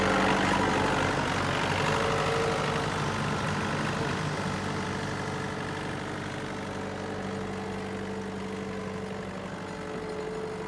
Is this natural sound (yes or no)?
yes